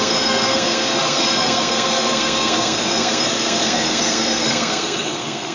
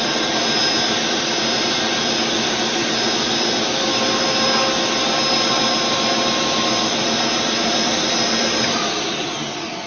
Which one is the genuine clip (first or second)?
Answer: second